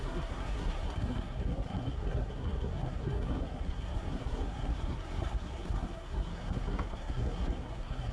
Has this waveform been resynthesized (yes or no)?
yes